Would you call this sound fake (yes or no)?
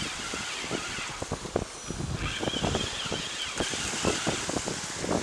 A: no